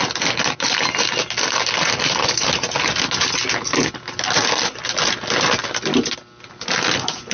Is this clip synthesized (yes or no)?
no